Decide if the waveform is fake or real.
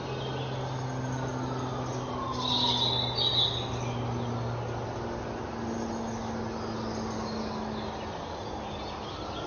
real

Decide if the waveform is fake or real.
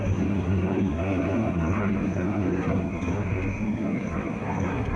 fake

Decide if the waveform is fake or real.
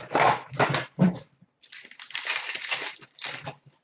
fake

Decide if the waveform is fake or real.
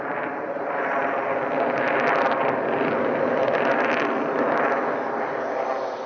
real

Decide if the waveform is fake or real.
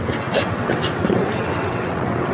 fake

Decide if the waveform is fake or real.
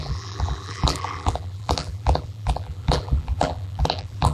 fake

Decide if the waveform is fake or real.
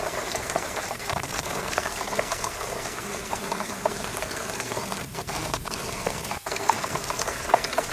fake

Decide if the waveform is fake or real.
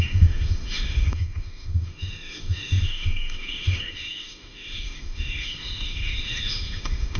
fake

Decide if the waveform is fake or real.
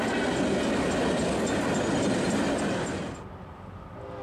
real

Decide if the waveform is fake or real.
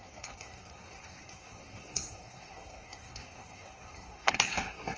fake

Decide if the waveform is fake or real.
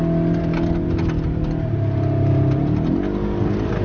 real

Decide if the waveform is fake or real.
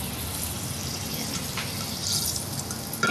real